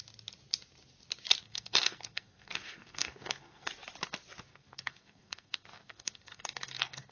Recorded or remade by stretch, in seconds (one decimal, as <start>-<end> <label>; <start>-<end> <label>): 0.0-1.4 recorded; 1.4-3.7 remade; 3.7-4.5 recorded; 4.5-7.1 remade